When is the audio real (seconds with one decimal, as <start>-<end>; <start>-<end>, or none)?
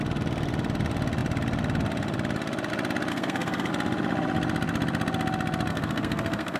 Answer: 0.0-3.1; 3.7-5.7